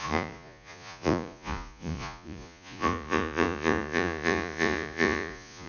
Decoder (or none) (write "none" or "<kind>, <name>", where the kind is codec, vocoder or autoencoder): vocoder, Vocos